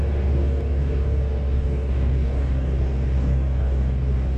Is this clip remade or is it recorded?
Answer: remade